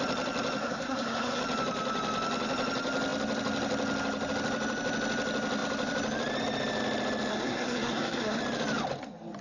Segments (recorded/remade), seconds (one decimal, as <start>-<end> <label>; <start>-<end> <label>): 0.0-0.6 recorded; 0.6-1.4 remade; 1.4-7.3 recorded; 7.3-8.4 remade; 8.4-9.4 recorded

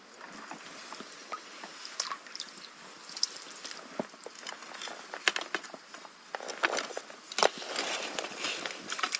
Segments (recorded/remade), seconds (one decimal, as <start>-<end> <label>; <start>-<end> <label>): 0.0-9.2 recorded

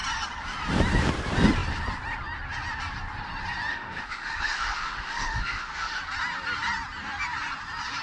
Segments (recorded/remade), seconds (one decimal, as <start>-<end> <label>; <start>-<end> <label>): 0.0-3.7 recorded; 3.7-6.0 remade; 6.0-8.0 recorded